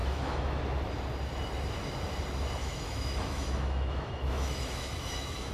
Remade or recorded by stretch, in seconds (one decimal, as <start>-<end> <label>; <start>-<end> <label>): 0.0-0.6 remade; 0.6-2.6 recorded; 2.6-5.5 remade